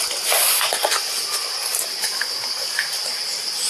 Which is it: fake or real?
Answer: real